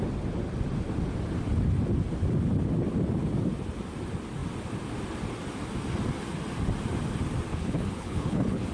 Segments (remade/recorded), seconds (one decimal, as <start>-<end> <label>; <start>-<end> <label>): 0.0-7.5 recorded; 7.5-8.7 remade